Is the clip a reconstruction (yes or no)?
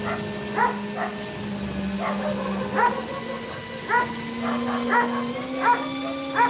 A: no